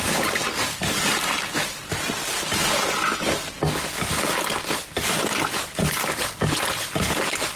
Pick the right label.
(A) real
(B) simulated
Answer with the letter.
A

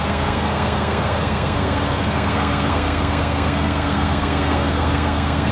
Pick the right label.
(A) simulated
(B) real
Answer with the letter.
A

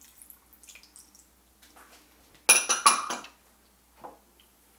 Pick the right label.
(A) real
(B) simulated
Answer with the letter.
A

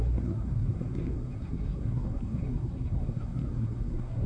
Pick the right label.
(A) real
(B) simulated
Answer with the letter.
B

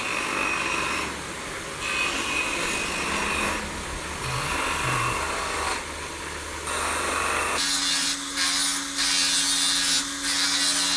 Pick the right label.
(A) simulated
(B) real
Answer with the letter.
B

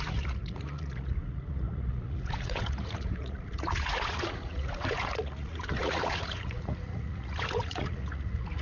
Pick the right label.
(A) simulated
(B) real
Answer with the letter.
A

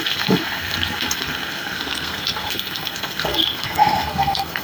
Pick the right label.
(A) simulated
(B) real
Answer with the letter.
A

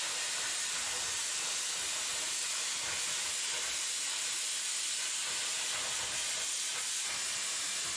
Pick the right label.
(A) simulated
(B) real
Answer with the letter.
B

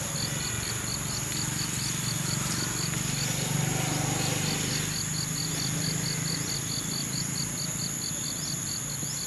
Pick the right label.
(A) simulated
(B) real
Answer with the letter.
B